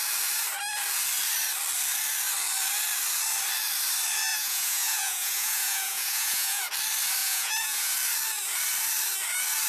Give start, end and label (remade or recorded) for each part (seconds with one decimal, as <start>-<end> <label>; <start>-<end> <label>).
0.0-4.3 recorded; 4.3-6.6 remade; 6.6-7.2 recorded; 7.2-7.9 remade; 7.9-9.7 recorded